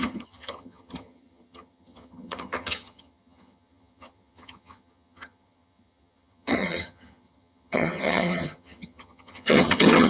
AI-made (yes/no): yes